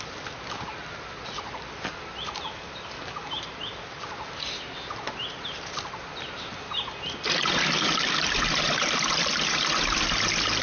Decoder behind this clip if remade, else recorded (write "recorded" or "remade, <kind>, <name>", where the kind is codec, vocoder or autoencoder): recorded